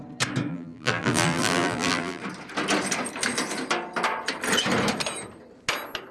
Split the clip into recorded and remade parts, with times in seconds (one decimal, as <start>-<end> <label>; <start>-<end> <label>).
0.0-0.5 recorded; 0.5-2.2 remade; 2.2-6.1 recorded